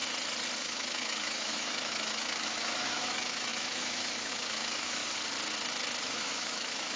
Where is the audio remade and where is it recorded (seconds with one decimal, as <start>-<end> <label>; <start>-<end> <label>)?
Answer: 0.0-0.6 recorded; 0.6-5.0 remade; 5.0-6.0 recorded; 6.0-7.0 remade